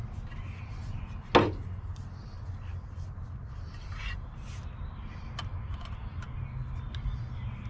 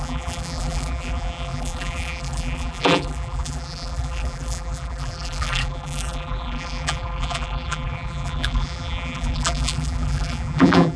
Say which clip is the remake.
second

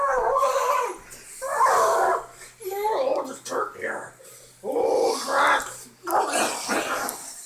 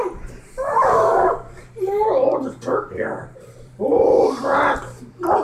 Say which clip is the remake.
second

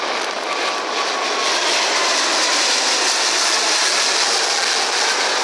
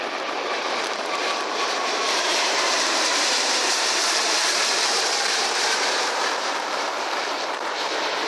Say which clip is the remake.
second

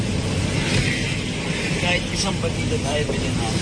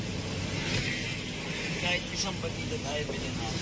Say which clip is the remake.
first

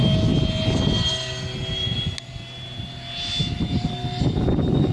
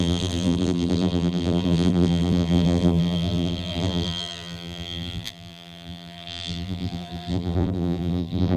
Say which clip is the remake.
second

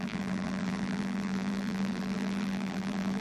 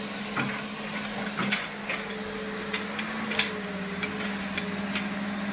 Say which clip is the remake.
first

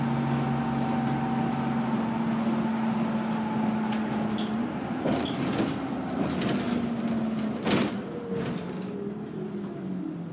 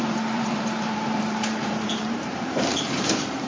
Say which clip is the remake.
second